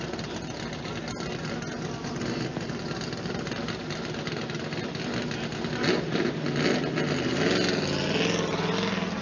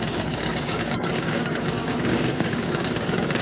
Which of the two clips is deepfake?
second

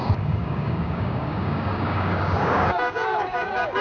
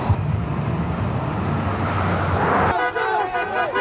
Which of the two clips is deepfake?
first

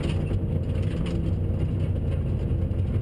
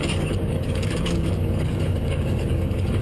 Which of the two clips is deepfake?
second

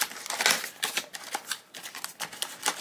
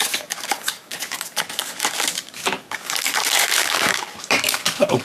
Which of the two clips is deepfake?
second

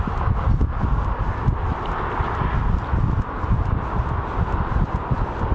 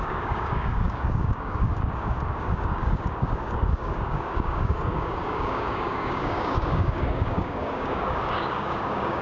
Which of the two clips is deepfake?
second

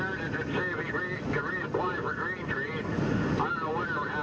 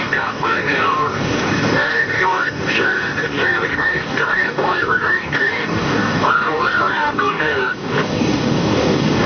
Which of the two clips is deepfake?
second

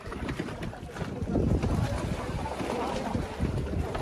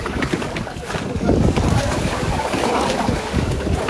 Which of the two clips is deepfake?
second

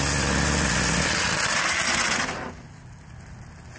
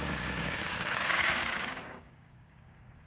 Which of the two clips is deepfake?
second